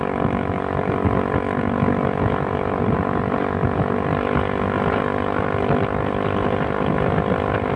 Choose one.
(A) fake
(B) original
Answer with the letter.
B